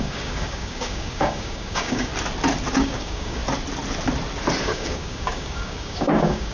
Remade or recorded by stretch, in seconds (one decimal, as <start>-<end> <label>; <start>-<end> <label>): 0.0-2.1 remade; 2.1-2.7 recorded; 2.7-3.4 remade; 3.4-4.6 recorded; 4.6-6.5 remade